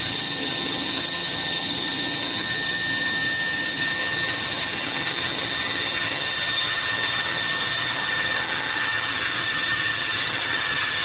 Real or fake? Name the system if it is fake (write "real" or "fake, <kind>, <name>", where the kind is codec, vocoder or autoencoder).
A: fake, vocoder, HiFi-GAN